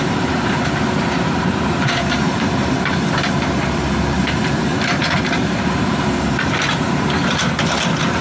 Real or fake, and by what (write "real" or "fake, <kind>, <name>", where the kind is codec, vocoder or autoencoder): fake, vocoder, BigVGAN v2